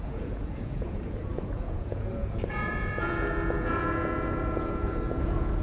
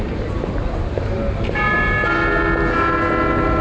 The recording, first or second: second